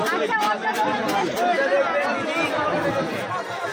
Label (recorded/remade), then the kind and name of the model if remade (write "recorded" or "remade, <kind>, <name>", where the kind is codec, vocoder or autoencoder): recorded